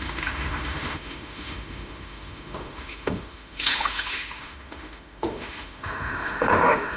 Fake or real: fake